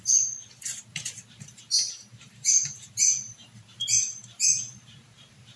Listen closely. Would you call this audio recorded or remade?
remade